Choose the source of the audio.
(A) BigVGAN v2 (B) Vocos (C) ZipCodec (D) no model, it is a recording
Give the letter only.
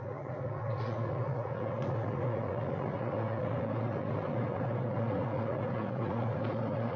B